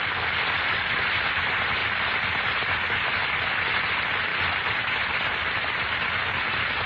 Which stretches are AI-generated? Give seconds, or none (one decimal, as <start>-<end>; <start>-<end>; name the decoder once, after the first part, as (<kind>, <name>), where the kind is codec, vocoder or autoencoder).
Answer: none